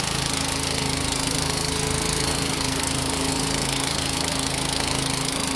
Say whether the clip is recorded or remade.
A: remade